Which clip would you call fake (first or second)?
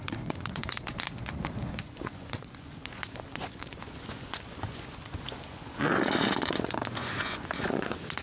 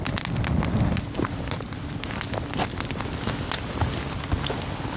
first